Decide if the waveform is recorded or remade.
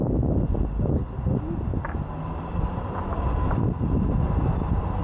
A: recorded